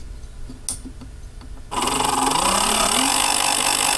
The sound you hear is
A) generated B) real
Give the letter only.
B